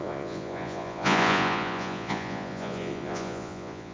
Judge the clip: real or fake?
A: fake